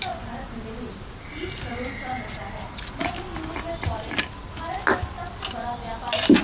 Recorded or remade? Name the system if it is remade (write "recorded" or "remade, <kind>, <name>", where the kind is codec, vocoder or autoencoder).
recorded